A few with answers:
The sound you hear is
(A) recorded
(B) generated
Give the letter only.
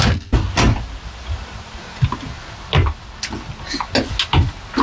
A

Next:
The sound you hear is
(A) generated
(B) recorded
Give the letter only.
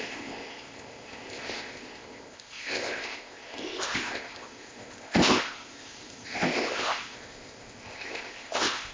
A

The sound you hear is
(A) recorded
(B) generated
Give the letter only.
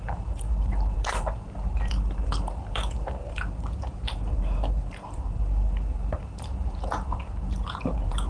B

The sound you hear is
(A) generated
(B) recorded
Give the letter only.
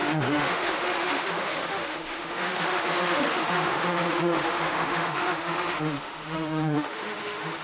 A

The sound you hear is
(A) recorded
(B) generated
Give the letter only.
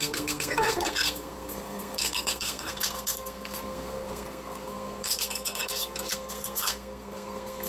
B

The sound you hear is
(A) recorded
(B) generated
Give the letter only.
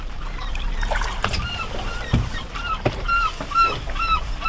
B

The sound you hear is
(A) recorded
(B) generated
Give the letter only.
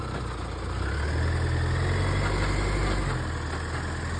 A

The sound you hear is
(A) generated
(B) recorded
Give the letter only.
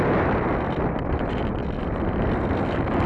B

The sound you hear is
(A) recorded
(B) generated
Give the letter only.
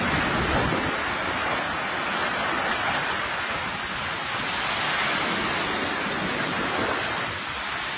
A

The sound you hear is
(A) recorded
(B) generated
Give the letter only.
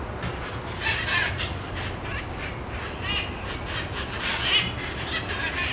A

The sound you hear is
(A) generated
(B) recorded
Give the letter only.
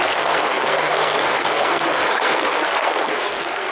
A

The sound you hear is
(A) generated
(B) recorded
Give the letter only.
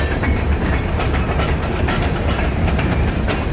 A